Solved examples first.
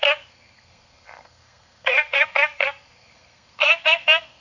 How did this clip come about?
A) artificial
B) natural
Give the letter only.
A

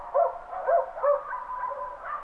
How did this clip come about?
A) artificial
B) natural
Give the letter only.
B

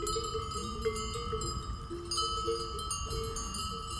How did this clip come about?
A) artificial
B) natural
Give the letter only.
B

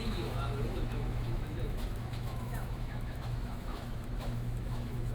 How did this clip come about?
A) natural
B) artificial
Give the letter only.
B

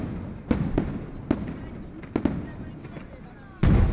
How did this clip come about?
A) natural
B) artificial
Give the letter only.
A